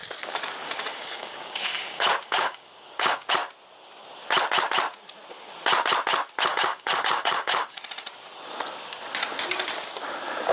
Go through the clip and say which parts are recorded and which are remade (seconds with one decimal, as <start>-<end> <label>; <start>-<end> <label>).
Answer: 0.0-0.6 recorded; 0.6-3.3 remade; 3.3-6.5 recorded; 6.5-7.8 remade; 7.8-10.5 recorded